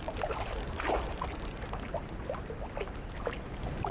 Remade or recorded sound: recorded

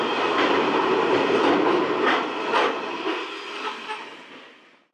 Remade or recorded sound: recorded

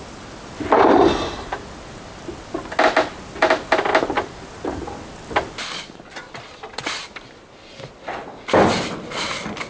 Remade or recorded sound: recorded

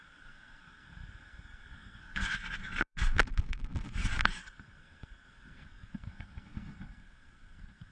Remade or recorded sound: remade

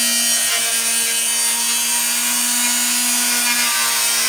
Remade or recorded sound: recorded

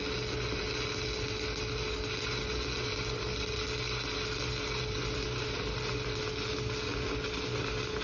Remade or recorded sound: recorded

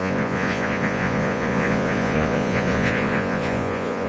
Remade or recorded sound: remade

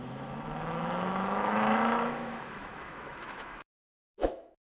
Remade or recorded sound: remade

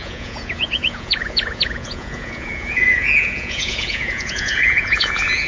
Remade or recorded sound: remade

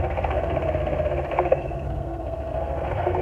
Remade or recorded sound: remade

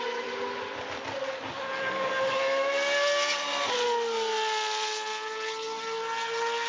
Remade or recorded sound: recorded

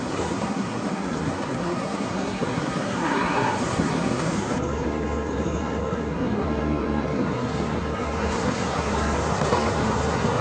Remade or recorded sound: remade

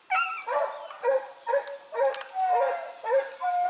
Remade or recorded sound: recorded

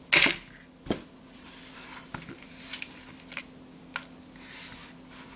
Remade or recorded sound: recorded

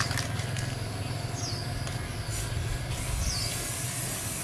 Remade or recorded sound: recorded